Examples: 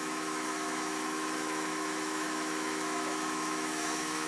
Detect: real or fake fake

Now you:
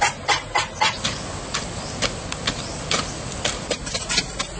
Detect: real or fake real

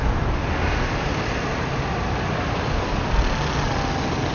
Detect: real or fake real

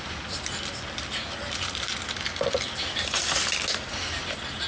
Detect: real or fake real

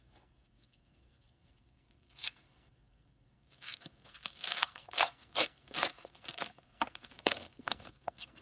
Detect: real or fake fake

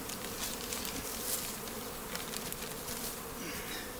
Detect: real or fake real